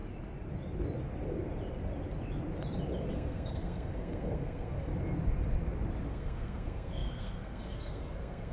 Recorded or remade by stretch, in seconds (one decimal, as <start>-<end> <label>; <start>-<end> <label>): 0.0-3.1 recorded; 3.1-4.9 remade; 4.9-6.1 recorded; 6.1-8.5 remade

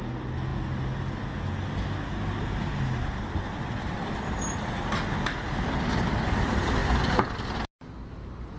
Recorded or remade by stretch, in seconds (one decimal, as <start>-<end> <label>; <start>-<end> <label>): 0.0-8.6 recorded

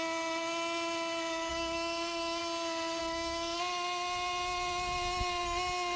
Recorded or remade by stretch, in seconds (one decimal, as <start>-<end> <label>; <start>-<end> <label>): 0.0-1.5 recorded; 1.5-2.4 remade; 2.4-3.0 recorded; 3.0-3.6 remade; 3.6-6.0 recorded

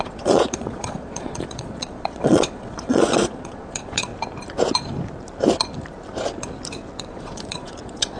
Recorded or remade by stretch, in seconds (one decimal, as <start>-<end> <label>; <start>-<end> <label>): 0.0-4.1 remade; 4.1-7.1 recorded; 7.1-8.2 remade